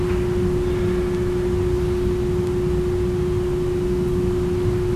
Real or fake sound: real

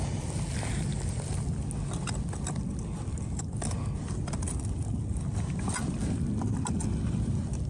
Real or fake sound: real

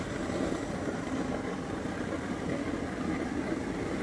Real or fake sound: real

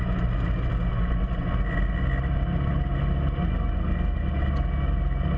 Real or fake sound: real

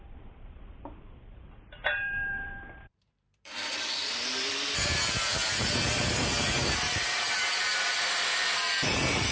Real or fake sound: fake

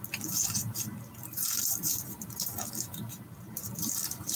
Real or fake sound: fake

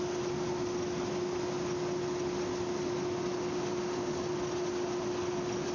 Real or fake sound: real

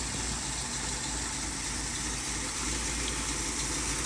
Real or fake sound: real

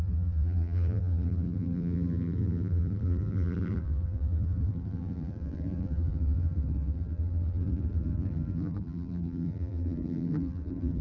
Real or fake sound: fake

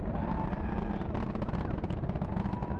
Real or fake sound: real